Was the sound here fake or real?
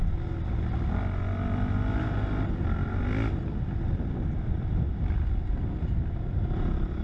real